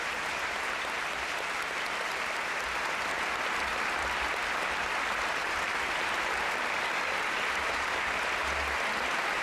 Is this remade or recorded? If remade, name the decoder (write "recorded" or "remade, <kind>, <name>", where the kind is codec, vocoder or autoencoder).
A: recorded